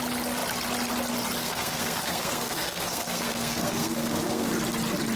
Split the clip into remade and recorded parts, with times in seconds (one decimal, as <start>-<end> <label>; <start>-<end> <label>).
0.0-1.4 recorded; 1.4-4.5 remade; 4.5-5.2 recorded

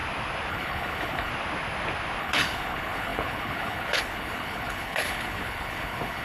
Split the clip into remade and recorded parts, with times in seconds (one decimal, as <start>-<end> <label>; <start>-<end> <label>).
0.0-0.5 recorded; 0.5-1.3 remade; 1.3-2.2 recorded; 2.2-6.2 remade

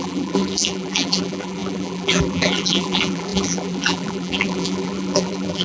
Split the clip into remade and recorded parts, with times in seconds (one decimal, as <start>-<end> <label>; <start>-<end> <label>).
0.0-5.6 remade

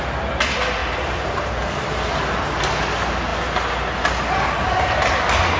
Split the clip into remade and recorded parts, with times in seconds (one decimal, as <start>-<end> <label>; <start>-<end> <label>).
0.0-0.8 recorded; 0.8-1.5 remade; 1.5-5.6 recorded